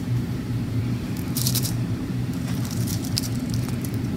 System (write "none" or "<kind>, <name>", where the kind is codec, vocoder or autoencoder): vocoder, BigVGAN v2